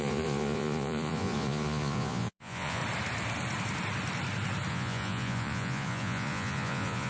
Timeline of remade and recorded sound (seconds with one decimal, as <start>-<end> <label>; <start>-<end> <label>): 0.0-2.8 remade; 2.8-4.7 recorded; 4.7-7.1 remade